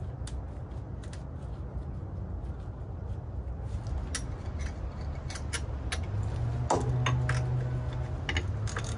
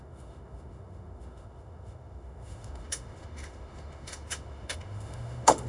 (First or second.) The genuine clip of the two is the first